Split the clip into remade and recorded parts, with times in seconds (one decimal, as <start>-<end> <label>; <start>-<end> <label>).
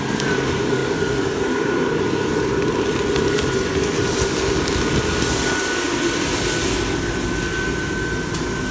0.0-8.7 recorded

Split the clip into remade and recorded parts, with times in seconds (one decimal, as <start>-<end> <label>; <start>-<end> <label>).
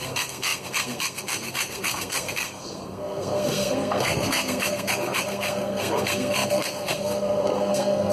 0.0-8.1 remade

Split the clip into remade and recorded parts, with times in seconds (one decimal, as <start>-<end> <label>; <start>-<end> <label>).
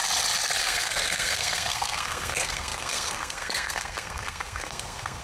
0.0-0.6 recorded; 0.6-5.2 remade